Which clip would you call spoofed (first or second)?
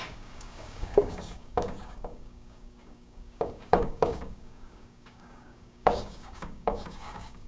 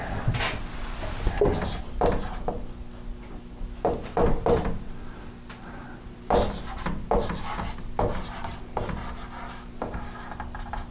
first